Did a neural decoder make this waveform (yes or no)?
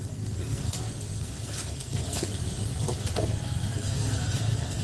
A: yes